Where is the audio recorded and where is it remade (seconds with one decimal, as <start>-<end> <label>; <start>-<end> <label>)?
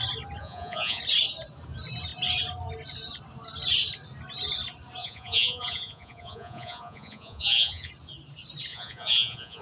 0.0-0.4 recorded; 0.4-1.0 remade; 1.0-5.0 recorded; 5.0-7.9 remade; 7.9-8.7 recorded; 8.7-9.6 remade